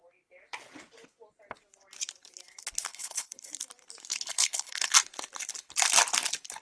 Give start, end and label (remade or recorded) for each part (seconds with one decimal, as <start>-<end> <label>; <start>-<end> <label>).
0.0-2.9 recorded; 2.9-3.5 remade; 3.5-4.1 recorded; 4.1-4.9 remade; 4.9-6.6 recorded